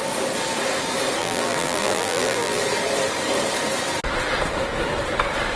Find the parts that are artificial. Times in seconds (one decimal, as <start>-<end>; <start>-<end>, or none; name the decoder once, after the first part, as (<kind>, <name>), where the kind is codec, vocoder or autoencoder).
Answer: 1.2-2.6 (vocoder, BigVGAN v2)